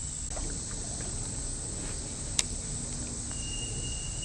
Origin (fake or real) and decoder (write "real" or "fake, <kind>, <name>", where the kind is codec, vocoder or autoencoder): real